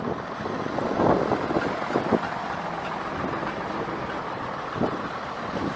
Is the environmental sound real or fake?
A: real